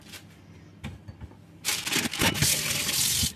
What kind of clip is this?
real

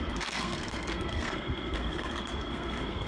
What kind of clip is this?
fake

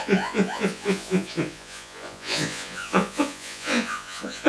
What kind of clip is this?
fake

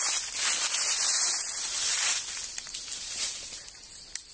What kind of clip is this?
real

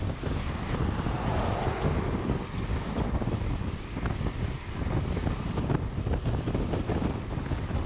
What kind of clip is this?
real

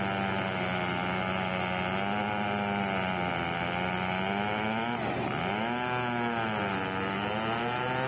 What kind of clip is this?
real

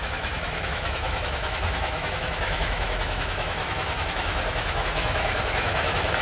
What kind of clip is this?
fake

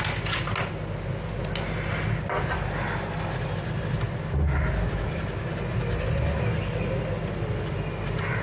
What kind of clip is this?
real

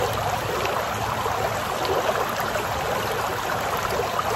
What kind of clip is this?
real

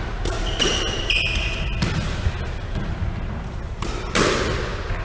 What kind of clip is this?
real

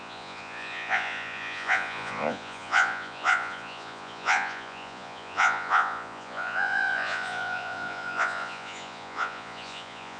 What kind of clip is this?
fake